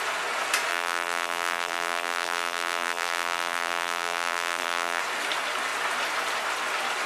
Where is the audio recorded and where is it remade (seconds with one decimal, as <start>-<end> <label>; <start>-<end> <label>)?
0.0-0.7 recorded; 0.7-5.0 remade; 5.0-7.1 recorded